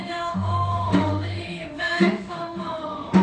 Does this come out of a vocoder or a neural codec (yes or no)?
yes